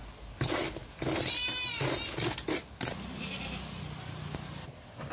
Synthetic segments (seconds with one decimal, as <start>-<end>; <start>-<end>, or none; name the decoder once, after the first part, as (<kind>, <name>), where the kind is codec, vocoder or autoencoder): none